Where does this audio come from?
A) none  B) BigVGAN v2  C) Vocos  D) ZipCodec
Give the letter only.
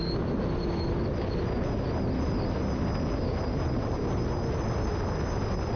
A